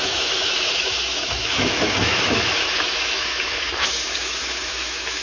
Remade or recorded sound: remade